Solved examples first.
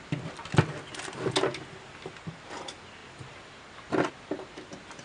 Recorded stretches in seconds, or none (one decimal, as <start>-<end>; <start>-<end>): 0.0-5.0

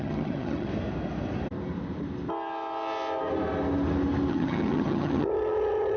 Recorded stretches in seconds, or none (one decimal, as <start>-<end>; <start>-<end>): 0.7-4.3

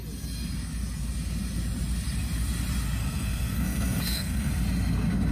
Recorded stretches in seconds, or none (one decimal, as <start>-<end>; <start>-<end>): 0.0-3.0; 4.5-5.3

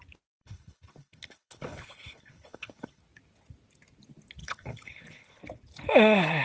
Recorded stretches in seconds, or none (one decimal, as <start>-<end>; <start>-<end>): 0.0-0.4; 3.0-4.4; 5.4-6.4